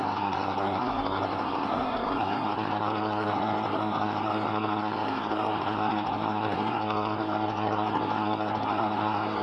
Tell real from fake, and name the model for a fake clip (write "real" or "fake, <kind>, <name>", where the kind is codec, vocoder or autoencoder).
fake, codec, SNAC